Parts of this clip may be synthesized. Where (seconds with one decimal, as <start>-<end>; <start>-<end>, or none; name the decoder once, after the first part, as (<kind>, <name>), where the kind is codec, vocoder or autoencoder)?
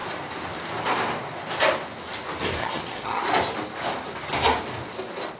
2.6-3.2 (vocoder, HiFi-GAN)